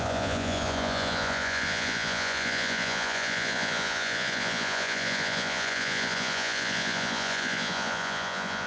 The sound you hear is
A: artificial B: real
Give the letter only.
A